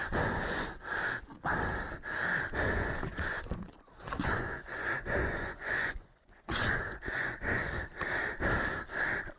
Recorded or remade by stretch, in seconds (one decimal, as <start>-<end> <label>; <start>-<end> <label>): 0.0-0.8 remade; 0.8-2.7 recorded; 2.7-7.7 remade; 7.7-9.4 recorded